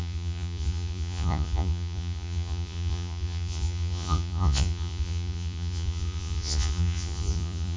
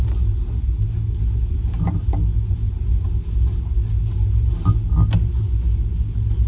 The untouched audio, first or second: second